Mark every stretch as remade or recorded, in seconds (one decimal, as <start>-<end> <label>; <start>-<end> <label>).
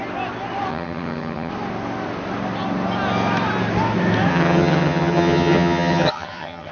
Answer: 0.0-0.7 recorded; 0.7-1.5 remade; 1.5-4.3 recorded; 4.3-6.7 remade